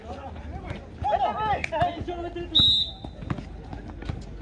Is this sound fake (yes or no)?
no